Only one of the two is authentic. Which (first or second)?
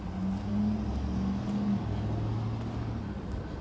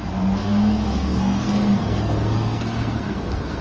first